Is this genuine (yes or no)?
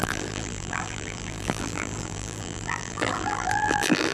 no